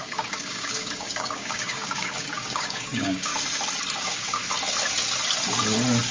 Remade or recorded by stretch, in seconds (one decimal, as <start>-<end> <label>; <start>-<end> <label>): 0.0-3.3 remade; 3.3-4.0 recorded; 4.0-4.4 remade; 4.4-6.1 recorded